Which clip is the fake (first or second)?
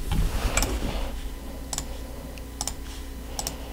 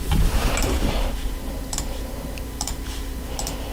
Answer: second